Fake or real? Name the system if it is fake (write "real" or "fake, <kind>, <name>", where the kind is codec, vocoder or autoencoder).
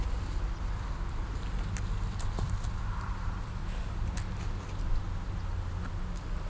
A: real